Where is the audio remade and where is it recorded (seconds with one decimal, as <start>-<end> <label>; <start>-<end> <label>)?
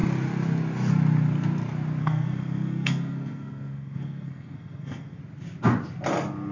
0.0-2.0 recorded; 2.0-5.2 remade; 5.2-6.5 recorded